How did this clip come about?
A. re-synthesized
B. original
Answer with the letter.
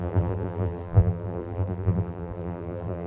A